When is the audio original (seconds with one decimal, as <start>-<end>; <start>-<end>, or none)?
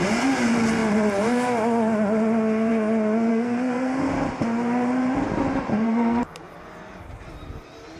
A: 0.0-3.3; 4.1-5.7; 6.2-8.0